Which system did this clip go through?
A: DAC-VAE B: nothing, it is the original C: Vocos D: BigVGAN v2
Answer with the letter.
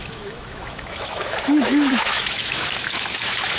A